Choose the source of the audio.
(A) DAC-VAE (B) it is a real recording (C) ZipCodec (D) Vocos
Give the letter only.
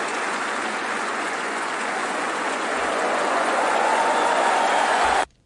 D